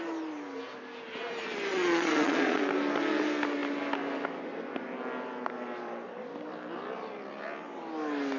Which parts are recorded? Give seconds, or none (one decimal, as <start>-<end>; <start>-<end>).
0.0-1.7; 2.6-8.4